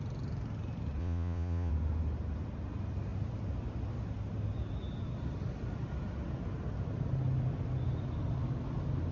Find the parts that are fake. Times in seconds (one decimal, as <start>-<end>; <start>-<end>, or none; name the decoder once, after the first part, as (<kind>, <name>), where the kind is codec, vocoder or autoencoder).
1.0-1.7 (vocoder, Vocos)